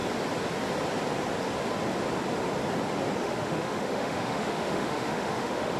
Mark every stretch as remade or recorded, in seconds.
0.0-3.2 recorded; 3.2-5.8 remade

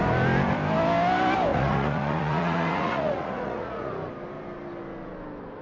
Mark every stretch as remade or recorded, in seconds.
0.0-1.5 recorded; 1.5-3.9 remade; 3.9-5.6 recorded

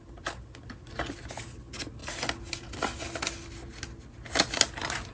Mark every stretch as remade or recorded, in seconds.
0.0-5.1 recorded

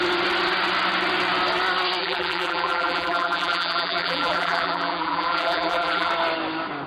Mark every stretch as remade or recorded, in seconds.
0.0-2.0 recorded; 2.0-6.1 remade; 6.1-6.9 recorded

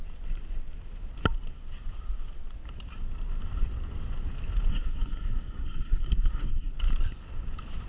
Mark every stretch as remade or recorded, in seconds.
0.0-4.7 recorded; 4.7-6.7 remade; 6.7-7.9 recorded